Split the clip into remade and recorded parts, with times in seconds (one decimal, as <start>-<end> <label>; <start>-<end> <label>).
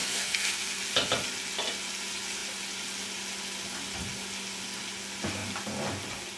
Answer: 0.0-0.8 remade; 0.8-6.4 recorded